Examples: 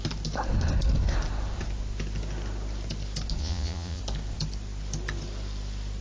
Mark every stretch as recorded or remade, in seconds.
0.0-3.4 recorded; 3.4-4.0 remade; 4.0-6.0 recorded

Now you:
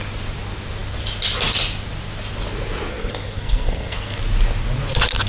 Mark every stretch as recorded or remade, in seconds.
0.0-2.9 recorded; 2.9-4.2 remade; 4.2-5.3 recorded

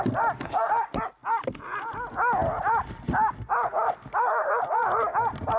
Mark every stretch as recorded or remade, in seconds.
0.0-5.6 recorded

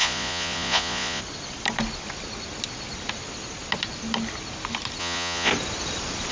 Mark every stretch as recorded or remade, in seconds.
0.0-1.2 remade; 1.2-5.0 recorded; 5.0-5.5 remade; 5.5-6.3 recorded

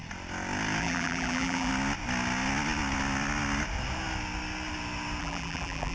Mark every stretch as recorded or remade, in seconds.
0.0-0.8 recorded; 0.8-1.7 remade; 1.7-5.2 recorded; 5.2-5.9 remade

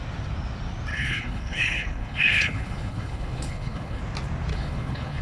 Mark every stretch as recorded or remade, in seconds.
0.0-0.9 recorded; 0.9-4.0 remade; 4.0-4.5 recorded; 4.5-5.2 remade

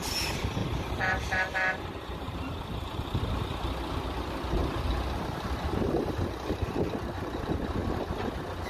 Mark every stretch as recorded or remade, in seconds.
0.0-0.6 recorded; 0.6-3.2 remade; 3.2-8.7 recorded